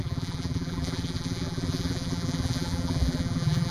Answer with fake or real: fake